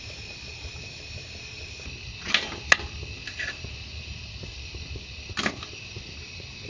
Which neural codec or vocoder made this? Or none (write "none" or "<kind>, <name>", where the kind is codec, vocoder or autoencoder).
none